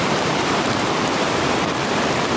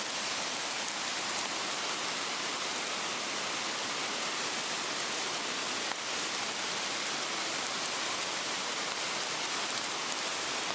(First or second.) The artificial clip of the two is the first